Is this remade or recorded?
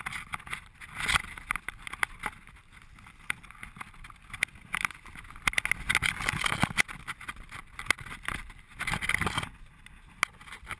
recorded